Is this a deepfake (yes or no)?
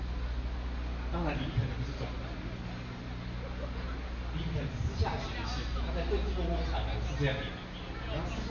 no